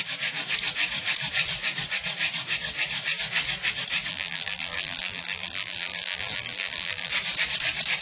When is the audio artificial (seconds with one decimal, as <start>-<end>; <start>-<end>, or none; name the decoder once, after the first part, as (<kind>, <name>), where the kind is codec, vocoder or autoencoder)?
4.1-7.1 (vocoder, BigVGAN v2)